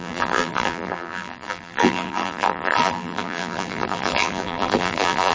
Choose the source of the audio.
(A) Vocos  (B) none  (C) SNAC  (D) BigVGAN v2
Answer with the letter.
D